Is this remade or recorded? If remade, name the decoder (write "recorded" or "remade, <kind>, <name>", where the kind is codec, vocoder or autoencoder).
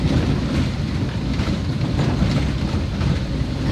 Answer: remade, vocoder, BigVGAN v2